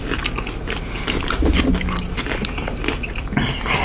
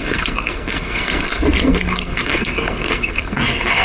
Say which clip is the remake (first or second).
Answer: second